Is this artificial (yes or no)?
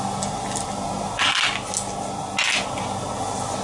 no